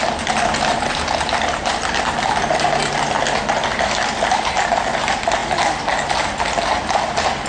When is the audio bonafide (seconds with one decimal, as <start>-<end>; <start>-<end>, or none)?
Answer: 0.0-3.7; 4.8-7.5